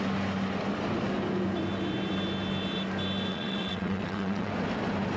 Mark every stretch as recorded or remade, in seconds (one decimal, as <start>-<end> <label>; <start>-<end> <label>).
0.0-3.3 recorded; 3.3-4.5 remade; 4.5-5.2 recorded